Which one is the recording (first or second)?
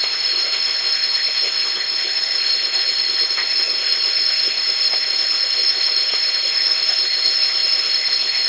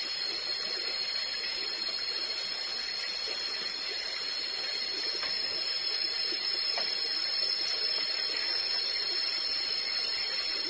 second